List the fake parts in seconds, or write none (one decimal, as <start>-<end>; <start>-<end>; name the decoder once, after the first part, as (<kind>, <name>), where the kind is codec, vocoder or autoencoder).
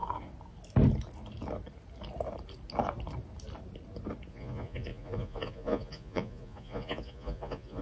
4.3-7.8 (vocoder, Vocos)